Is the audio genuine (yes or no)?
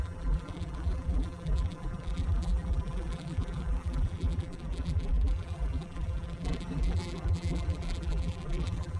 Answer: no